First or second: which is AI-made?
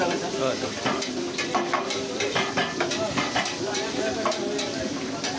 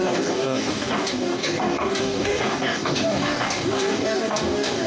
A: second